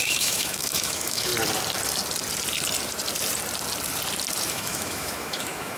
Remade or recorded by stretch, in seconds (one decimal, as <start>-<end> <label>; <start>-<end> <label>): 0.0-1.3 remade; 1.3-4.5 recorded; 4.5-5.8 remade